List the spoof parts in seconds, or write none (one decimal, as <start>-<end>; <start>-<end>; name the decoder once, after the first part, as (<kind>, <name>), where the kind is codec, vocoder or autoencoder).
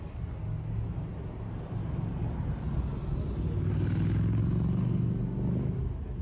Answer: none